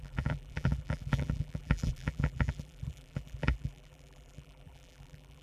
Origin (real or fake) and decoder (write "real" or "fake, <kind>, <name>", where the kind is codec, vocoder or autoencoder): fake, vocoder, BigVGAN v2